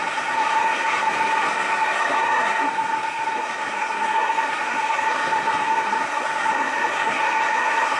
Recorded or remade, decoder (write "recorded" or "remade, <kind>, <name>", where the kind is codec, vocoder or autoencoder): remade, codec, SNAC